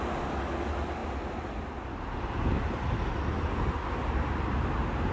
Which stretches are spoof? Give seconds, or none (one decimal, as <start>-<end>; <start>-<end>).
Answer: none